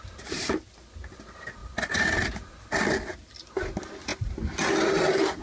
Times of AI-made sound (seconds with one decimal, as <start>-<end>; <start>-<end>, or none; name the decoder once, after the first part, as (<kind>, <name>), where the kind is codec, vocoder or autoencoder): none